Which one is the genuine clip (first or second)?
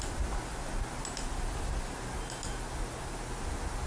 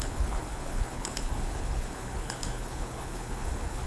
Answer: first